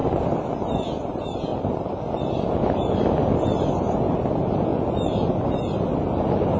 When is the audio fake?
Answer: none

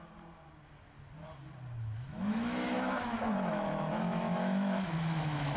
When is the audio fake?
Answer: 2.1-5.6 (autoencoder, DAC-VAE)